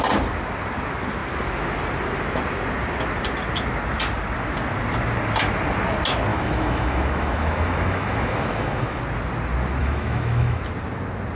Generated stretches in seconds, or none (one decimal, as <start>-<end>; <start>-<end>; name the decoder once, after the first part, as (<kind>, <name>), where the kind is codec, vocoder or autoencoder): 6.3-9.0 (autoencoder, DAC-VAE); 9.8-10.6